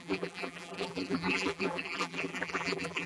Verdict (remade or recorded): remade